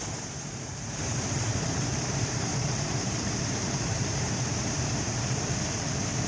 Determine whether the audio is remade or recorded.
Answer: remade